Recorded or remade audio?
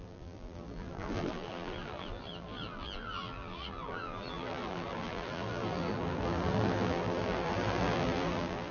remade